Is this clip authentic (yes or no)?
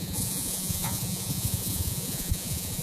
no